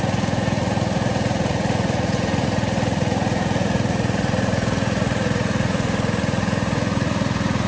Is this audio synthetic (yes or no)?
yes